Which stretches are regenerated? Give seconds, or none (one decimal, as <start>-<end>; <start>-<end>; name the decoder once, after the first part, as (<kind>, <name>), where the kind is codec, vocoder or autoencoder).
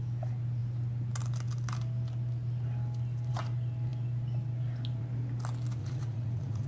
5.8-6.7 (vocoder, Vocos)